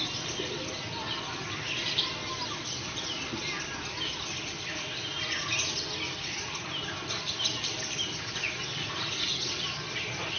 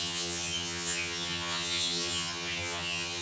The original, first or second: first